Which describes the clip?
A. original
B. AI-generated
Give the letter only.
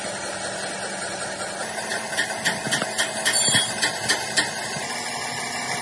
A